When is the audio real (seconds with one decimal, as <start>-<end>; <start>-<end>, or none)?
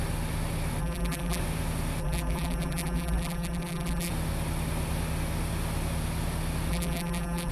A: 0.0-0.8; 1.4-2.0; 4.1-6.7